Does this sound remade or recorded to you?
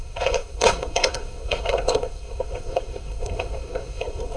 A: remade